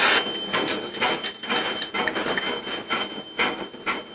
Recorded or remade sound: recorded